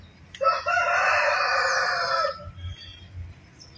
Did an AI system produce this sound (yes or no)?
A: no